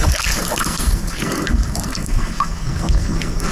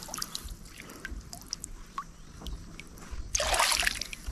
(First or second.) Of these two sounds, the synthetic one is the first